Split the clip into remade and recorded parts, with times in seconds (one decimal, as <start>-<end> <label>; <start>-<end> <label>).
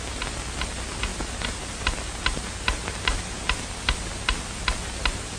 0.0-5.4 recorded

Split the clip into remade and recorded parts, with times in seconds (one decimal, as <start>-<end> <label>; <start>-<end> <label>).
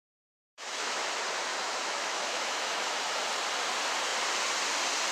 0.0-1.1 remade; 1.1-1.5 recorded; 1.5-3.0 remade; 3.0-5.1 recorded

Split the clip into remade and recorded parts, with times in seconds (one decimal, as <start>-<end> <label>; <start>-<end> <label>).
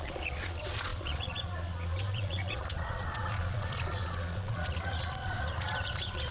0.0-6.3 remade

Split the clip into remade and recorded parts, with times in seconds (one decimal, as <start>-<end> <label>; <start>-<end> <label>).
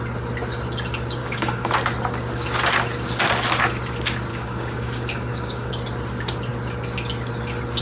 0.0-1.2 recorded; 1.2-1.7 remade; 1.7-4.3 recorded; 4.3-5.7 remade; 5.7-7.8 recorded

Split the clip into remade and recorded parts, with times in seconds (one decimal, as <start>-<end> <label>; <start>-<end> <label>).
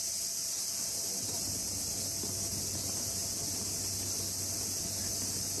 0.0-5.6 recorded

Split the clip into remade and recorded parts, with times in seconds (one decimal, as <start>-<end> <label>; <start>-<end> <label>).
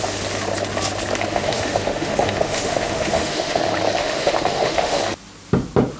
0.0-1.3 recorded; 1.3-3.6 remade; 3.6-4.0 recorded; 4.0-5.0 remade; 5.0-6.0 recorded